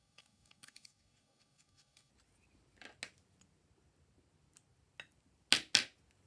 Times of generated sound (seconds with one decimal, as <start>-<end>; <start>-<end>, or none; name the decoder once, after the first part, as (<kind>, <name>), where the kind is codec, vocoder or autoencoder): 0.0-2.1 (codec, DAC)